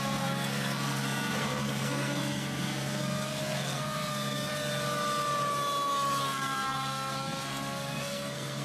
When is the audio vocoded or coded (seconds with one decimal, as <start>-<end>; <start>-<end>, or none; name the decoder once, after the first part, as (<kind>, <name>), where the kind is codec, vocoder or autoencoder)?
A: 0.0-4.5 (codec, SNAC); 6.2-8.6